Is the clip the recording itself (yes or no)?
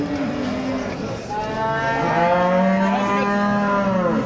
yes